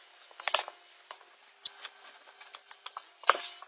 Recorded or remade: recorded